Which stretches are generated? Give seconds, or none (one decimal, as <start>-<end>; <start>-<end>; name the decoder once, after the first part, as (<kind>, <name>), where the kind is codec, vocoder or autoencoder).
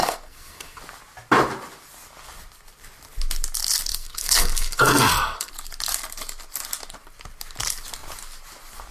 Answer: 0.0-0.8 (codec, SNAC); 3.9-5.5